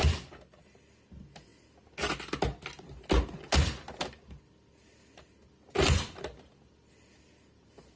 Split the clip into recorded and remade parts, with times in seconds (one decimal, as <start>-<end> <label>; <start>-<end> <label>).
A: 0.0-8.0 recorded